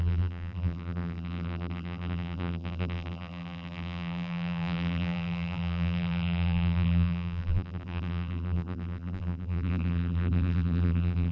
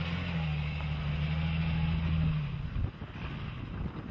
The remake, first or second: first